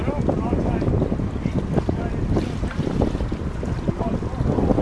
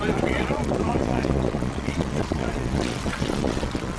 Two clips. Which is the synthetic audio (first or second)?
second